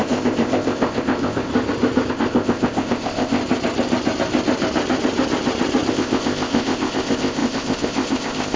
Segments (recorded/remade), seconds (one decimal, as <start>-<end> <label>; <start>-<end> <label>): 0.0-1.5 remade; 1.5-2.1 recorded; 2.1-3.4 remade; 3.4-5.9 recorded; 5.9-8.6 remade